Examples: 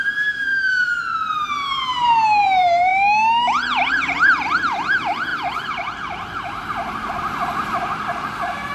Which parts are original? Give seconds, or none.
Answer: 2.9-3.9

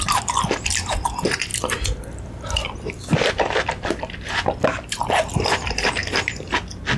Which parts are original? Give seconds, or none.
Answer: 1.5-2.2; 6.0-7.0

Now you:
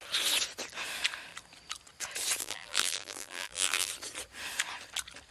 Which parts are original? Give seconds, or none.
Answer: 0.0-2.4; 3.9-5.3